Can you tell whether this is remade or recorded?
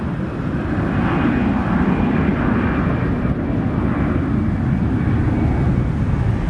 recorded